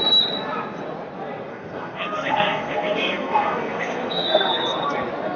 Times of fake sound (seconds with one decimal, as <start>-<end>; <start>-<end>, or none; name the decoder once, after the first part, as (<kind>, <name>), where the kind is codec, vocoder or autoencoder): 1.5-4.5 (codec, SNAC)